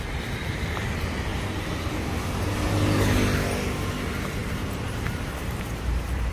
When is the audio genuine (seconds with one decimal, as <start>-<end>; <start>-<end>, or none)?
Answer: 0.0-1.3; 2.3-4.4